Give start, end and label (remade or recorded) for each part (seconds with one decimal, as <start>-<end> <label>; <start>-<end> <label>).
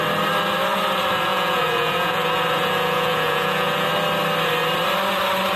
0.0-1.3 recorded; 1.3-3.9 remade; 3.9-5.6 recorded